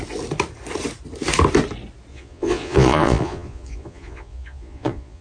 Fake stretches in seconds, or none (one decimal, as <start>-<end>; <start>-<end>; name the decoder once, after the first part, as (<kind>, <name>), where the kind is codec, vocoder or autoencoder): 2.1-5.2 (vocoder, Vocos)